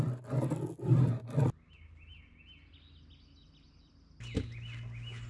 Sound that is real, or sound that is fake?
real